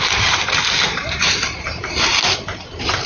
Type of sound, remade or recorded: remade